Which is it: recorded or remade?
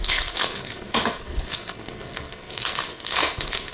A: remade